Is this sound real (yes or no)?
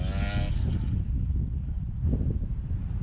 yes